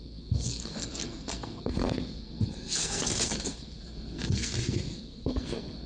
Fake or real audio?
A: fake